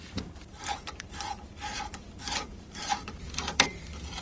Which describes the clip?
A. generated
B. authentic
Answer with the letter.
A